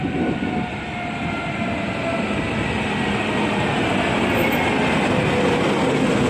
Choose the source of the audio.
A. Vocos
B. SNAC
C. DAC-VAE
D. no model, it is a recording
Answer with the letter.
D